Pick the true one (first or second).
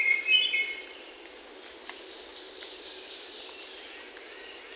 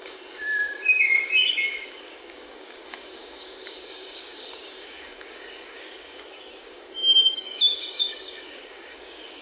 first